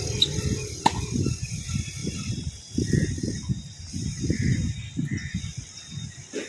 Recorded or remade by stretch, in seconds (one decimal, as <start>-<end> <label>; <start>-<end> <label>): 0.0-2.0 remade; 2.0-5.9 recorded; 5.9-6.5 remade